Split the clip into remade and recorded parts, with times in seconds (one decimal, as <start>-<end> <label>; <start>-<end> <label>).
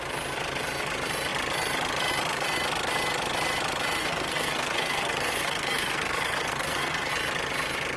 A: 0.0-4.0 recorded; 4.0-7.1 remade; 7.1-8.0 recorded